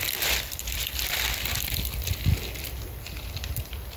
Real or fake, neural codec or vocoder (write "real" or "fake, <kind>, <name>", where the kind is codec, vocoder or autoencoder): real